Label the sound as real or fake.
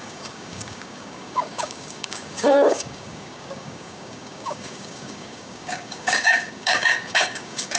fake